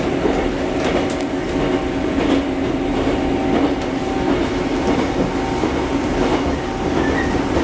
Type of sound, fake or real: real